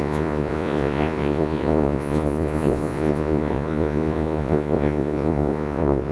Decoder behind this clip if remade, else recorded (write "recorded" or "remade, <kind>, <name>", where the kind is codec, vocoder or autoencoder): remade, vocoder, Vocos